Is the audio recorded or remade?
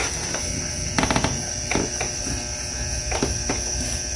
recorded